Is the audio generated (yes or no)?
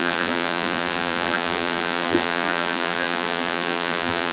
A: yes